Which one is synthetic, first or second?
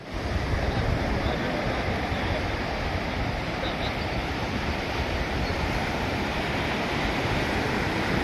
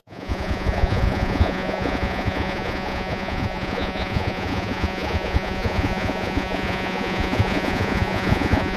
second